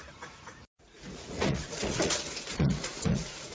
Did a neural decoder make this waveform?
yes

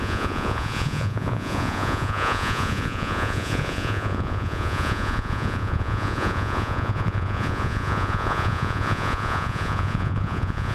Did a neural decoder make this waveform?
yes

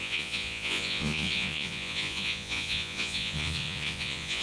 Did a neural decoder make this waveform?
yes